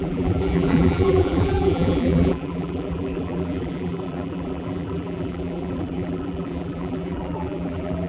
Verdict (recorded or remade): remade